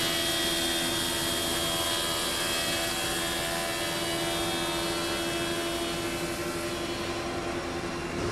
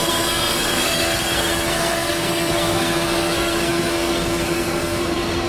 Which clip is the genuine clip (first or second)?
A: first